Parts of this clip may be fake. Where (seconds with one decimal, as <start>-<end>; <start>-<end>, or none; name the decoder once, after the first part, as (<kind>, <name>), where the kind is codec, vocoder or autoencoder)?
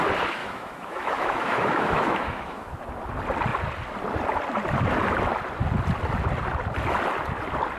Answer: 0.4-2.7 (autoencoder, DAC-VAE)